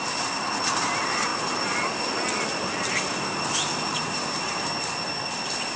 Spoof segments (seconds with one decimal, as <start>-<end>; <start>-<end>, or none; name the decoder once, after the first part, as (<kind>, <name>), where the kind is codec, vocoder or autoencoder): none